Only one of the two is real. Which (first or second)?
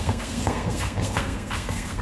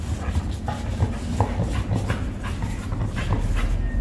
second